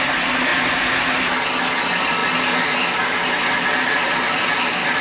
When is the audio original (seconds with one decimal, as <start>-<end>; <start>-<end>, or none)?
0.0-5.0